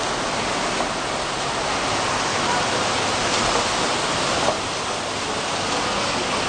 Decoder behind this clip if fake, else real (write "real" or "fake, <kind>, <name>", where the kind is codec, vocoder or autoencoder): real